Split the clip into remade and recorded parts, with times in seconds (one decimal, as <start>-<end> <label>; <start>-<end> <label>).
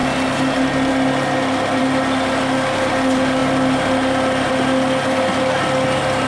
0.0-6.3 recorded